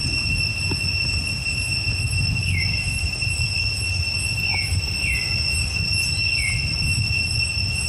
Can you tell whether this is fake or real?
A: real